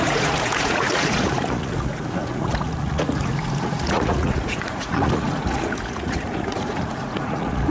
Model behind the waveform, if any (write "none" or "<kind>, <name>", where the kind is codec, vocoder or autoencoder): vocoder, Vocos